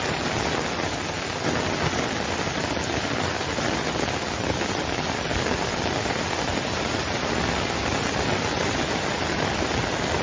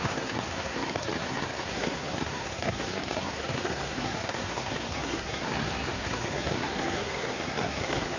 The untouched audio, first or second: first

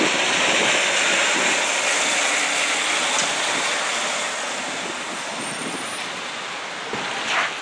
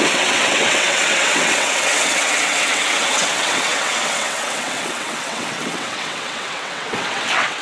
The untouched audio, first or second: first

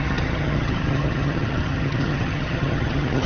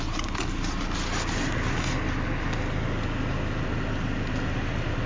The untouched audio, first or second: second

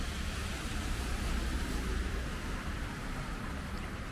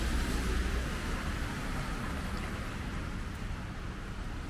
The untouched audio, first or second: second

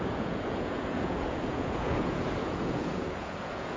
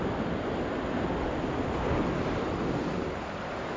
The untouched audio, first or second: second